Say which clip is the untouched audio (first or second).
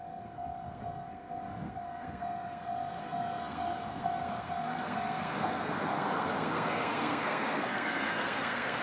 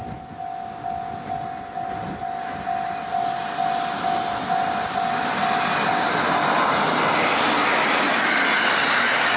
second